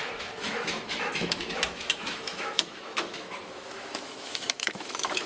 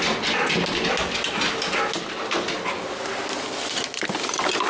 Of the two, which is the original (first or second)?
second